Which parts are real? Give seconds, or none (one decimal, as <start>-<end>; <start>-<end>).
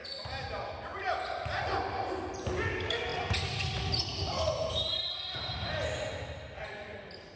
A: 0.0-7.4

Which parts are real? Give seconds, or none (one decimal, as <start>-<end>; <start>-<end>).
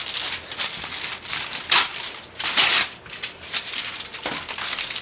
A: 0.0-5.0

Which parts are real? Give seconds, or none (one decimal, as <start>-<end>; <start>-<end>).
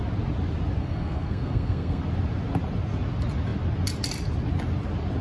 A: 0.0-0.8; 2.0-5.2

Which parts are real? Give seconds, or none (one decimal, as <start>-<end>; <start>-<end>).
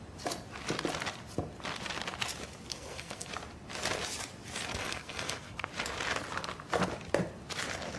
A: 0.0-2.7; 3.3-4.7; 5.7-8.0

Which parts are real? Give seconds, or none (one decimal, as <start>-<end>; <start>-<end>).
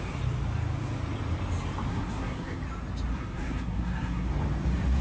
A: 0.0-1.9; 2.6-3.1; 4.3-5.0